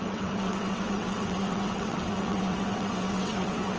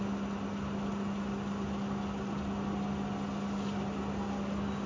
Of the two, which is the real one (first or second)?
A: second